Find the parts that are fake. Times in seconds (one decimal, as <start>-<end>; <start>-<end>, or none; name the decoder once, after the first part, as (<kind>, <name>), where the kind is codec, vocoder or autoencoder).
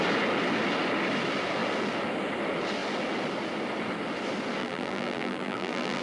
4.6-6.0 (vocoder, BigVGAN v2)